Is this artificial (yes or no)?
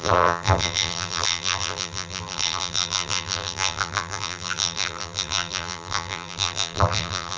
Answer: yes